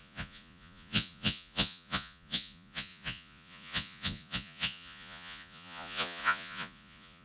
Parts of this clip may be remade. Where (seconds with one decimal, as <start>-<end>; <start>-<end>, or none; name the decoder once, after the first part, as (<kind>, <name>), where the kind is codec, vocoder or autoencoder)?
0.0-7.2 (vocoder, Vocos)